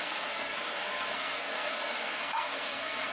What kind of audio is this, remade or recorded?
remade